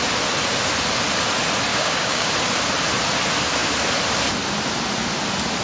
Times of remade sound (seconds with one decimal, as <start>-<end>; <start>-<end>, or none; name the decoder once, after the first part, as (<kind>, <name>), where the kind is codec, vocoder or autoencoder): 1.7-2.3 (codec, DAC)